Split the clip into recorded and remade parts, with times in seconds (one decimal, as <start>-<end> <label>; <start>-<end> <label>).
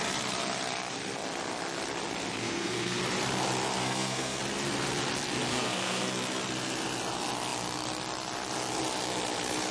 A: 0.0-2.4 recorded; 2.4-3.0 remade; 3.0-3.8 recorded; 3.8-4.4 remade; 4.4-5.5 recorded; 5.5-6.1 remade; 6.1-9.7 recorded